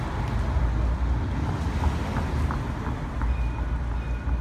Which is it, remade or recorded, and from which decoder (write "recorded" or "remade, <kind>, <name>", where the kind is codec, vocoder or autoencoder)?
recorded